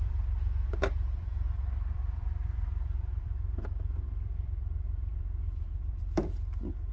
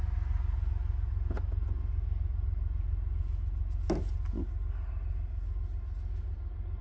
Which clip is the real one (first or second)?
second